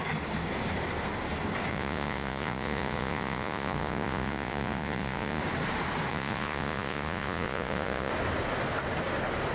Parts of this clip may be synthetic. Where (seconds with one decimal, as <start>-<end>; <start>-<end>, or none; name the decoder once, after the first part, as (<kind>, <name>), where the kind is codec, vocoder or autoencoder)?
1.7-5.4 (vocoder, Vocos); 6.1-8.1